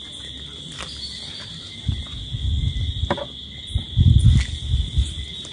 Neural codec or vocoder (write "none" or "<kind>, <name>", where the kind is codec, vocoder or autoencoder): none